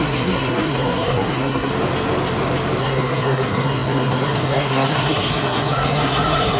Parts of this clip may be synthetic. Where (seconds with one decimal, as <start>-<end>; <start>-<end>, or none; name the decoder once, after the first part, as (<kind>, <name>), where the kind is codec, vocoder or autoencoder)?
0.0-1.7 (codec, SNAC); 2.8-6.6